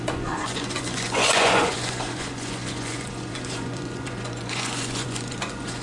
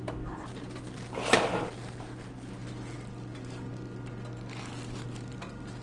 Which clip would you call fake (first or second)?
first